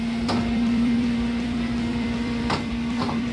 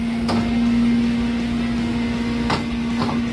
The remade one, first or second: first